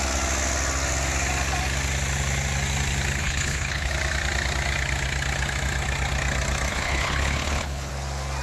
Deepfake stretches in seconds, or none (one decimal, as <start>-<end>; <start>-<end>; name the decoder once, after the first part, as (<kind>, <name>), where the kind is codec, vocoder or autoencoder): 3.2-3.9 (codec, HILCodec); 6.7-7.9